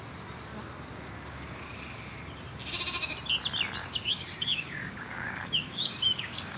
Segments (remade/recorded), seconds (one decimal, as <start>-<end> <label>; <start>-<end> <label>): 0.0-0.9 recorded; 0.9-1.6 remade; 1.6-3.8 recorded; 3.8-6.6 remade